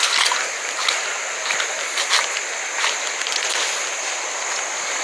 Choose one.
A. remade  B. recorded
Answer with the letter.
B